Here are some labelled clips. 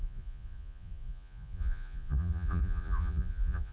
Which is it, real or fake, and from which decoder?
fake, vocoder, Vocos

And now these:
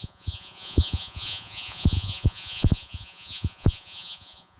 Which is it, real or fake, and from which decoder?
fake, vocoder, Vocos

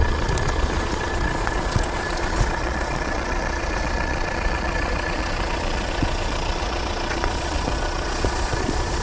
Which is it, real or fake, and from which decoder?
fake, vocoder, Vocos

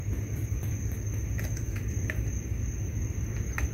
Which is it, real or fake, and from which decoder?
real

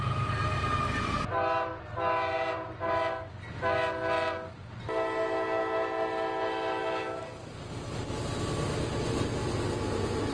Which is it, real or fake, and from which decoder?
real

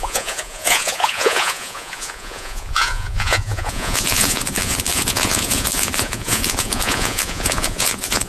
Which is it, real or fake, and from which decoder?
fake, vocoder, Vocos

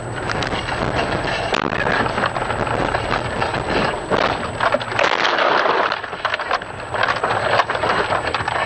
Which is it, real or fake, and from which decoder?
real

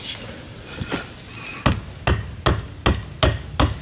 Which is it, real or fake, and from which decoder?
real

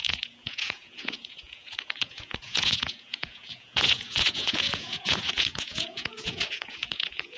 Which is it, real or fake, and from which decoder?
fake, vocoder, Vocos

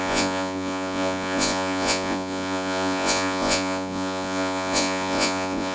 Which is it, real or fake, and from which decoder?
fake, vocoder, Vocos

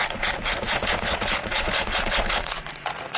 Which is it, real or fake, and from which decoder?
fake, vocoder, Vocos